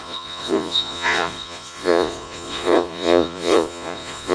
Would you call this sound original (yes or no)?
no